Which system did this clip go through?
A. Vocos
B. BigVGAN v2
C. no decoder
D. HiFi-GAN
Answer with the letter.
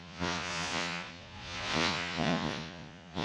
A